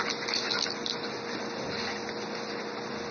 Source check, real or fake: real